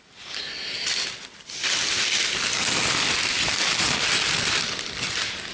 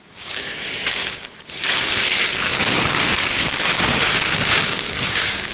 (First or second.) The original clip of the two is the first